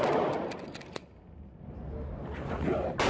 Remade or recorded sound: recorded